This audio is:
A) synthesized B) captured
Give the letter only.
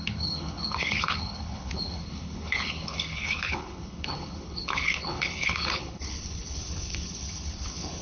A